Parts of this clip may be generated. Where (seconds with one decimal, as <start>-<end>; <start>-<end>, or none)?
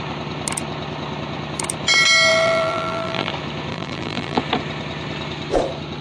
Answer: 2.3-3.3; 3.7-4.4